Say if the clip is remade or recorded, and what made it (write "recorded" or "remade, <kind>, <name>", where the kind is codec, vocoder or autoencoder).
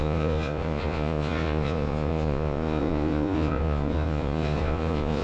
remade, vocoder, Vocos